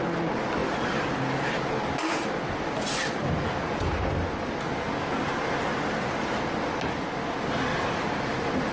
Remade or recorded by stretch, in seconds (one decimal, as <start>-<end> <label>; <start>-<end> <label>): 0.0-0.6 recorded; 0.6-1.2 remade; 1.2-7.7 recorded; 7.7-8.7 remade